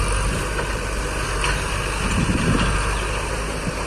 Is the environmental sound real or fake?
real